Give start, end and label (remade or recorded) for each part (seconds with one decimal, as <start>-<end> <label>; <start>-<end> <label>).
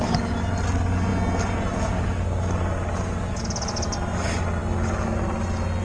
0.0-5.8 recorded